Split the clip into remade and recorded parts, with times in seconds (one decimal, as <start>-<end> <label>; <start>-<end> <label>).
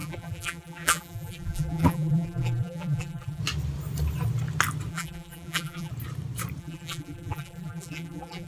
0.0-3.4 remade; 3.4-4.9 recorded; 4.9-5.9 remade; 5.9-6.6 recorded; 6.6-8.5 remade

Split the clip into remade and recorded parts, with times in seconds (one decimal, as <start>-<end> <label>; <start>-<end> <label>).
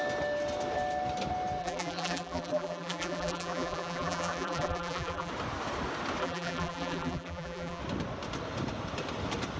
0.0-1.6 recorded; 1.6-5.3 remade; 5.3-6.2 recorded; 6.2-7.8 remade; 7.8-9.6 recorded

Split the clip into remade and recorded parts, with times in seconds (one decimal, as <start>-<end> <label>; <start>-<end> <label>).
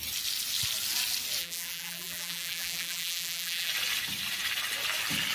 0.0-1.4 recorded; 1.4-3.7 remade; 3.7-5.3 recorded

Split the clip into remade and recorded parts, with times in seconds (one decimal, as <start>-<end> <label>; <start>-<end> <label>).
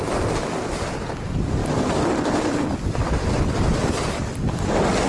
0.0-1.6 recorded; 1.6-4.4 remade; 4.4-5.1 recorded